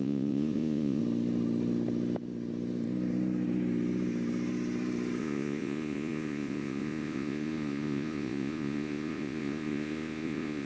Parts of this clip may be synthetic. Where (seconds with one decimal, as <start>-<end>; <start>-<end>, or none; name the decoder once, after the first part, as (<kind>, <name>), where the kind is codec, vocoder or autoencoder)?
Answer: 0.0-1.0 (vocoder, Vocos); 5.2-10.7